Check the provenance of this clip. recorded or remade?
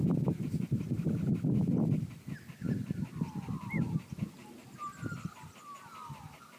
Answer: remade